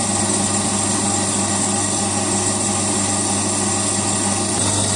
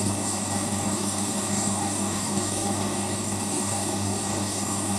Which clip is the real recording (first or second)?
first